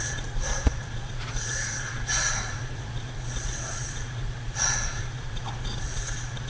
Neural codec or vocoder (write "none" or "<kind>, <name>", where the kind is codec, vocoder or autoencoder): vocoder, Vocos